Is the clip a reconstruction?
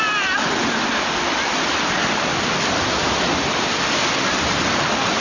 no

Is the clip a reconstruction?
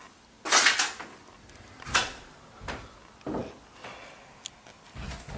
no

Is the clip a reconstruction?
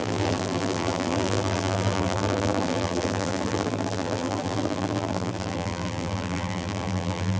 yes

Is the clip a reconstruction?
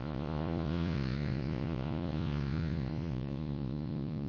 yes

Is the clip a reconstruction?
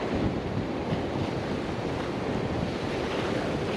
yes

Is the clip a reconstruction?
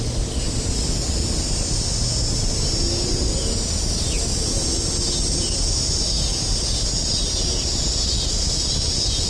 no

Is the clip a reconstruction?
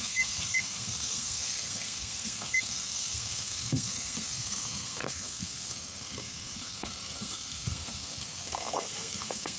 yes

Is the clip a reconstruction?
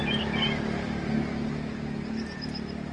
no